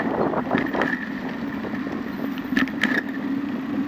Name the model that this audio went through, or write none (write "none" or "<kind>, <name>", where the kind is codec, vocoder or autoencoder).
none